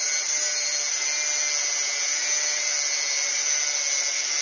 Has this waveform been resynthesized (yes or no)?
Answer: no